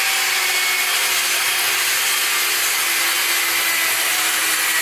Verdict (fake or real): real